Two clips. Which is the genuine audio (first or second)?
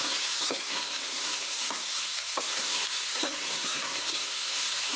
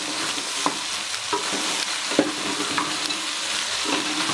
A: second